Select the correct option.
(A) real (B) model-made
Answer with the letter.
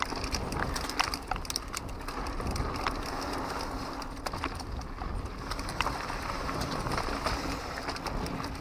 A